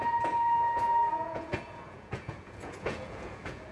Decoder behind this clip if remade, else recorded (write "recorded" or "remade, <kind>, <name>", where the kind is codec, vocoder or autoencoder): remade, vocoder, Vocos